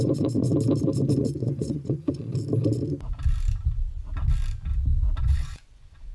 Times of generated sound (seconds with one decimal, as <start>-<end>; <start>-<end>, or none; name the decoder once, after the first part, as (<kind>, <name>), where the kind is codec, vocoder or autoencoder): 0.0-0.5 (vocoder, Vocos); 1.2-2.3; 5.2-6.1